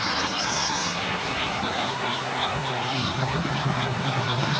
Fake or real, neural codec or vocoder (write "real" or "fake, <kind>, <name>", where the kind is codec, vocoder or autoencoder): fake, codec, SNAC